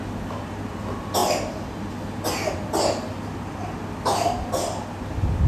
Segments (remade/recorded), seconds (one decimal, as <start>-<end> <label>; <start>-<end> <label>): 0.0-5.5 recorded